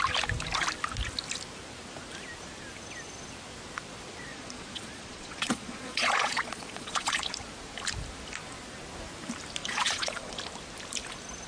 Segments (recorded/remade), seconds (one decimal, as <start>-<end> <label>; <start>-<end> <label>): 0.0-4.3 recorded; 4.3-7.2 remade; 7.2-9.6 recorded; 9.6-10.4 remade; 10.4-11.5 recorded